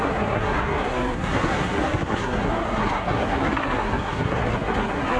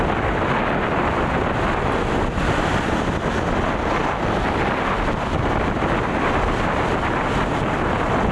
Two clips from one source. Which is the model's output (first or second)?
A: first